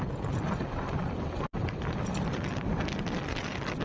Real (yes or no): yes